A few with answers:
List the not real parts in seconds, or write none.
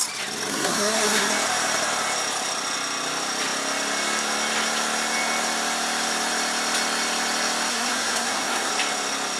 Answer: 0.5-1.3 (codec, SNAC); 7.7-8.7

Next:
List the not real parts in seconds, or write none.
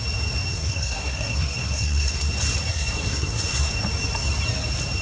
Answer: 0.5-2.3 (codec, SNAC); 2.7-3.7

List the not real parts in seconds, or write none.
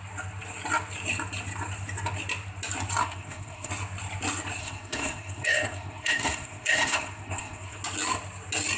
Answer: 3.0-3.7 (codec, SNAC); 4.6-7.8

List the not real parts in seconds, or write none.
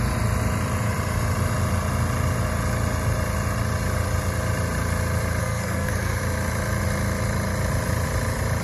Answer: 5.4-6.2 (codec, SNAC)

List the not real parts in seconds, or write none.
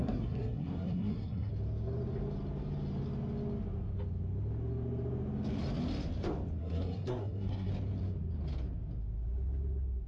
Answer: 0.0-1.5 (codec, SNAC); 6.6-7.7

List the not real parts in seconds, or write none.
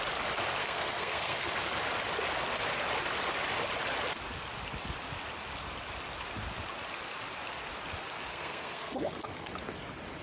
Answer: 0.6-1.5 (codec, SNAC); 8.3-9.5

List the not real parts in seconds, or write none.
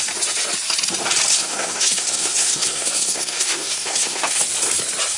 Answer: 1.3-4.4 (codec, SNAC)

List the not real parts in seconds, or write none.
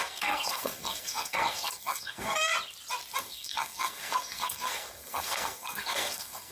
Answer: 0.0-2.5 (codec, SNAC); 3.2-6.5